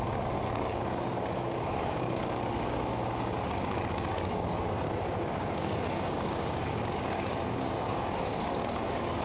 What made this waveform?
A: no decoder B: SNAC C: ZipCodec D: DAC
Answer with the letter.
D